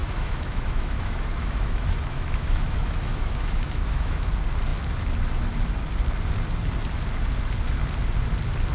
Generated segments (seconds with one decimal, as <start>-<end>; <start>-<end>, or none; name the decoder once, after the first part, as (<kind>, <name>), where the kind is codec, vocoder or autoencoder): 0.0-4.3 (autoencoder, DAC-VAE)